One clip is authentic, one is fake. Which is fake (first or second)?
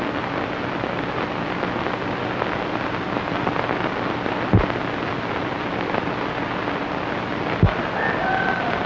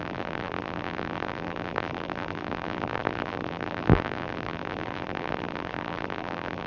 second